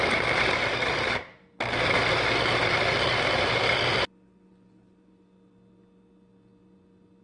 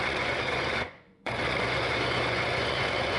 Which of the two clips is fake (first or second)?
second